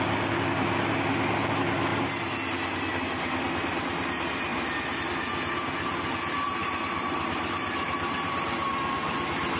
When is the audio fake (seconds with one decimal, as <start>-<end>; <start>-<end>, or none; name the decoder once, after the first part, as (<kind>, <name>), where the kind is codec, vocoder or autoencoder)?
4.5-5.0 (vocoder, BigVGAN v2); 6.6-9.2